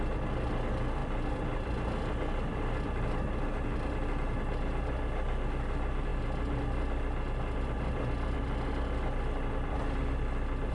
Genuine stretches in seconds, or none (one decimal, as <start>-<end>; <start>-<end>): 0.0-10.7